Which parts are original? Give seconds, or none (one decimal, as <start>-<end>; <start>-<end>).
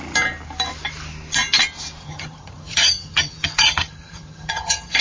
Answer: 0.0-2.0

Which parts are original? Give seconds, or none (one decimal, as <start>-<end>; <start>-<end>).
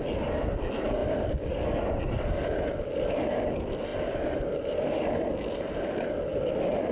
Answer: 0.0-6.9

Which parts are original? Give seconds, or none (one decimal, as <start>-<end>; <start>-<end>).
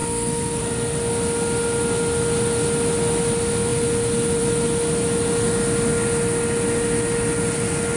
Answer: 0.6-8.0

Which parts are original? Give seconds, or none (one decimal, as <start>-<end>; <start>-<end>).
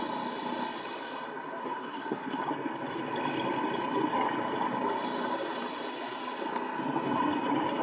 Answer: 0.0-1.6; 2.4-7.8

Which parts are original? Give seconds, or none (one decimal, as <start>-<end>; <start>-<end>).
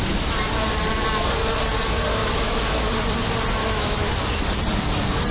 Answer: 0.0-2.2; 2.9-3.6; 4.1-5.3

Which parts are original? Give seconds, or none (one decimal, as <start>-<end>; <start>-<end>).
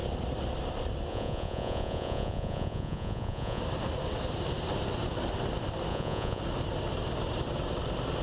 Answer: 0.0-1.1; 3.6-5.9; 6.4-8.2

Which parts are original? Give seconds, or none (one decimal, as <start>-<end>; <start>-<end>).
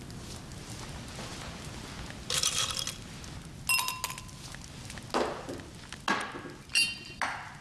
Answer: 0.0-7.6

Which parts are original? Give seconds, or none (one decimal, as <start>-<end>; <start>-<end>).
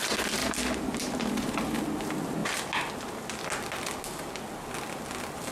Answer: 0.0-0.4; 1.8-5.5